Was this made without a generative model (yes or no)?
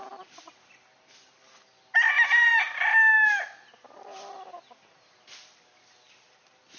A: yes